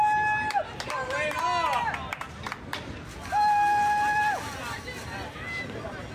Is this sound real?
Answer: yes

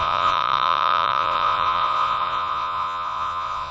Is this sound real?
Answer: no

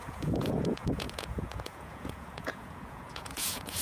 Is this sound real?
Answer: no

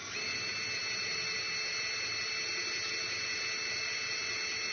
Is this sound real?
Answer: yes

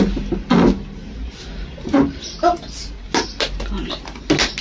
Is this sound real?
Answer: yes